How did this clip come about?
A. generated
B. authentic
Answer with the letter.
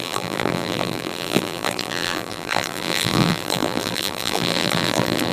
A